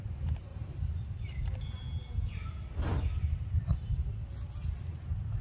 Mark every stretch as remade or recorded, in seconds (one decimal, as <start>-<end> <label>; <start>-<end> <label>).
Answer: 0.0-0.5 recorded; 0.5-1.8 remade; 1.8-5.4 recorded

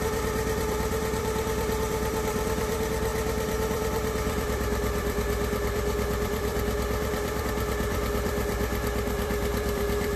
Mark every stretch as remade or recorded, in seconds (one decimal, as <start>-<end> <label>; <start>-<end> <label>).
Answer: 0.0-10.2 remade